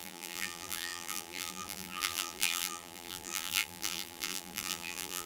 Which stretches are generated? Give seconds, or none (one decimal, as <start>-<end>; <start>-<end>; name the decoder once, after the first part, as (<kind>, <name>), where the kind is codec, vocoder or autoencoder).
0.0-5.3 (vocoder, BigVGAN v2)